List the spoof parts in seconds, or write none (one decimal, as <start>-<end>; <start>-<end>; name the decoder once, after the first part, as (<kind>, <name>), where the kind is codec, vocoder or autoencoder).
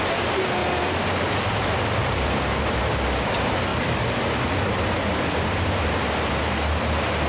0.6-2.8 (vocoder, BigVGAN v2); 3.7-5.3